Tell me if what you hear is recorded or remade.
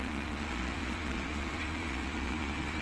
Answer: remade